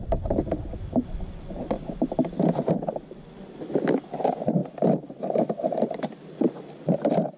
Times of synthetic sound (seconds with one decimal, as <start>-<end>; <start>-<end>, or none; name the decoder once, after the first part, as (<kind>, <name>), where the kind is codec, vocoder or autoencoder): none